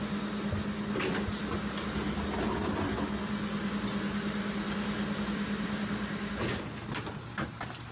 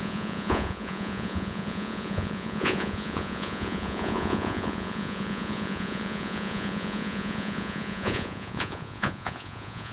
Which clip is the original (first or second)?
first